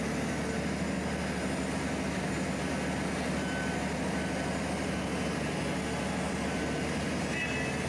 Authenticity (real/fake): real